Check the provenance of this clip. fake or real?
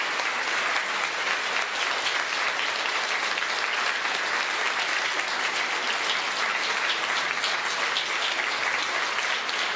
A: real